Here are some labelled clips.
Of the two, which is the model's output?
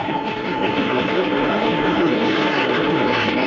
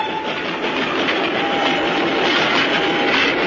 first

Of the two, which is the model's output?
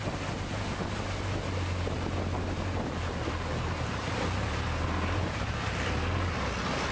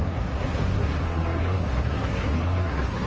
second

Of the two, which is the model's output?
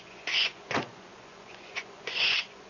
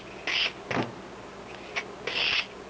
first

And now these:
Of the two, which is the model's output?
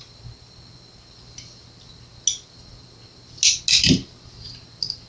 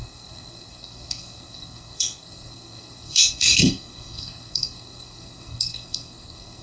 second